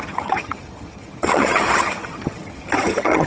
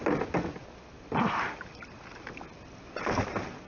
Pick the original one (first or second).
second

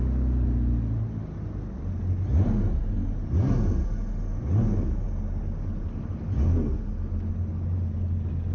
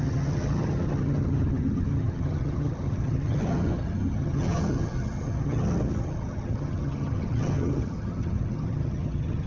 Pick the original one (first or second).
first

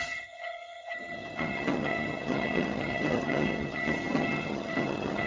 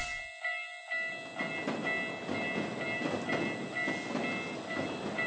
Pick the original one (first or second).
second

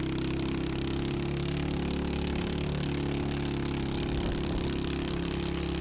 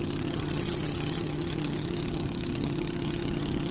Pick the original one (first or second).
first